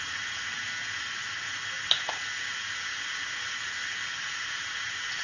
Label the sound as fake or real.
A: real